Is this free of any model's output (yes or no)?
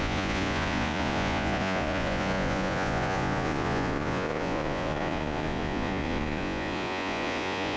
no